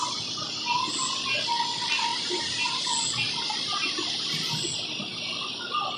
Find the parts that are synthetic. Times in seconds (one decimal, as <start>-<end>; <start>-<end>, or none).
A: 2.1-2.8